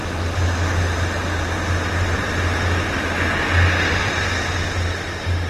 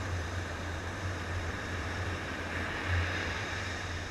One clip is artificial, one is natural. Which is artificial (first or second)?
second